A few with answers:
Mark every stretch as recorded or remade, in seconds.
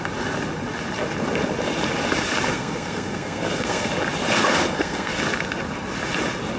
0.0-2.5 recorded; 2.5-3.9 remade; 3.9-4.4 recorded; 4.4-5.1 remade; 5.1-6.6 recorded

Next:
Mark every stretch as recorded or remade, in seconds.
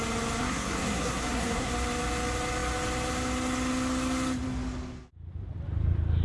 0.0-0.4 recorded; 0.4-1.7 remade; 1.7-6.2 recorded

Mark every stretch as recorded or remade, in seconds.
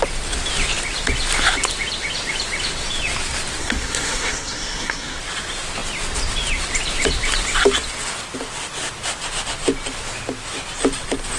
0.0-3.6 recorded; 3.6-5.2 remade; 5.2-11.4 recorded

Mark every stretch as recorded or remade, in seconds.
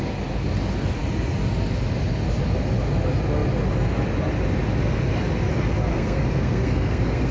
0.0-5.9 recorded; 5.9-7.3 remade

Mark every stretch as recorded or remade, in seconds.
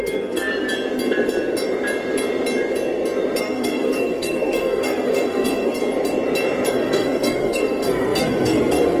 0.0-0.5 remade; 0.5-3.4 recorded; 3.4-5.8 remade; 5.8-6.7 recorded; 6.7-9.0 remade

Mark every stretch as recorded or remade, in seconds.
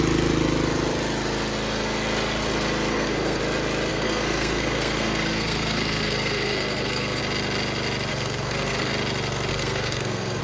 0.0-2.9 recorded; 2.9-3.4 remade; 3.4-3.9 recorded; 3.9-7.2 remade; 7.2-8.1 recorded; 8.1-8.9 remade; 8.9-9.5 recorded; 9.5-10.4 remade